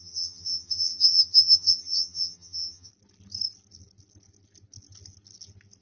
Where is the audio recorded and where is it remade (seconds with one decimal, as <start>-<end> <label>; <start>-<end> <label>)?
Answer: 0.0-2.9 remade; 2.9-5.8 recorded